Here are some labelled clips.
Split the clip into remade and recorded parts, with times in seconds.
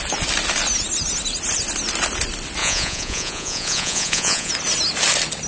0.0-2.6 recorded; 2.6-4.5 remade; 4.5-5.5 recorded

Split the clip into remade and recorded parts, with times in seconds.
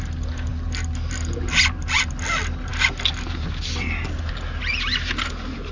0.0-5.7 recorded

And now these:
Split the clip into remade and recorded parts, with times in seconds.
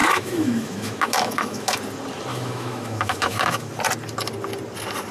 0.0-1.8 remade; 1.8-2.3 recorded; 2.3-3.7 remade; 3.7-5.1 recorded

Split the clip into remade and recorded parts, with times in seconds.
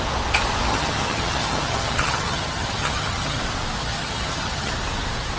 0.0-0.7 recorded; 0.7-3.4 remade; 3.4-3.8 recorded; 3.8-4.7 remade; 4.7-5.4 recorded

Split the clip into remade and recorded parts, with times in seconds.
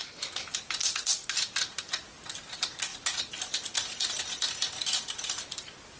0.0-6.0 recorded